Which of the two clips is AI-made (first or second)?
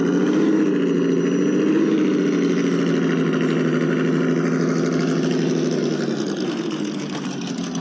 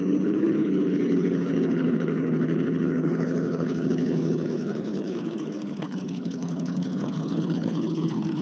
second